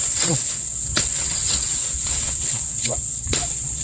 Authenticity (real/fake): fake